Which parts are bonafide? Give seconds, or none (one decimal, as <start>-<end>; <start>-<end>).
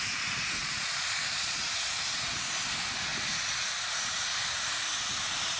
0.0-0.6; 1.6-5.6